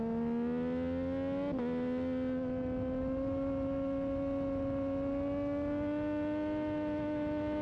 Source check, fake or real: real